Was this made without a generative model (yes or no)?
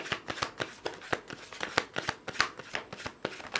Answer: yes